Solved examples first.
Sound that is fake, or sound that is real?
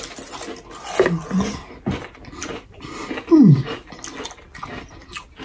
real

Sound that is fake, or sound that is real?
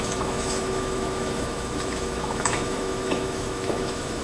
fake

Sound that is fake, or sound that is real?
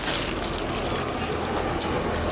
real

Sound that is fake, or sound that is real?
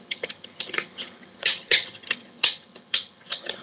fake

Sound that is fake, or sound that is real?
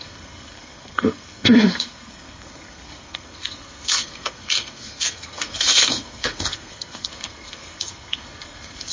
fake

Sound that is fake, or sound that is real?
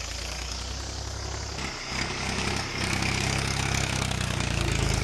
fake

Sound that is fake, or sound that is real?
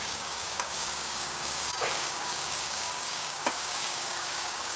fake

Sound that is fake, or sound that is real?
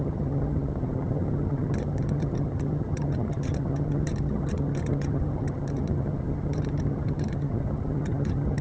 fake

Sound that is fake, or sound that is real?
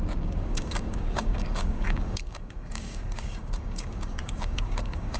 fake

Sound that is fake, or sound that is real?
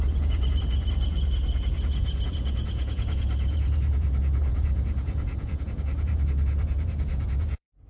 fake